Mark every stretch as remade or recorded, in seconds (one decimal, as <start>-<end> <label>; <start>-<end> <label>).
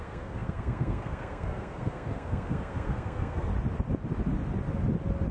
0.0-3.5 remade; 3.5-5.3 recorded